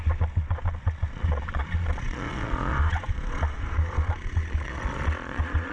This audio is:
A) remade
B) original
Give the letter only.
A